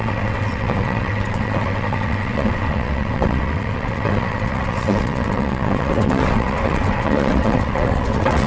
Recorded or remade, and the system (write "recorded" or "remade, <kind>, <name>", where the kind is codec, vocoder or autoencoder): remade, vocoder, WaveNeXt